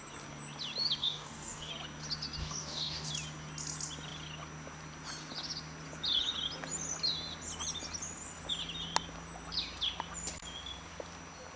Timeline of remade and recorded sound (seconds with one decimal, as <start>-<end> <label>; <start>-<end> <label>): 0.0-1.0 recorded; 1.0-1.7 remade; 1.7-2.4 recorded; 2.4-3.1 remade; 3.1-11.6 recorded